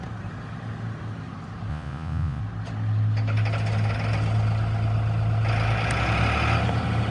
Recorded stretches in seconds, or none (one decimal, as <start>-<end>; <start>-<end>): 0.0-1.7; 2.4-7.1